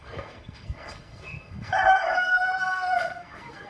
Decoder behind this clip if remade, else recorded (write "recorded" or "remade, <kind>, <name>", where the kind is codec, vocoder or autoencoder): remade, codec, SNAC